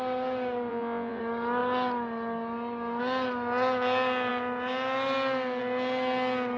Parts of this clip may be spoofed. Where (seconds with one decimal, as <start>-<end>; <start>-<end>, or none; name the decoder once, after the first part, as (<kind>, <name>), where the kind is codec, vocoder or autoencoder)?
0.7-1.2 (vocoder, Vocos)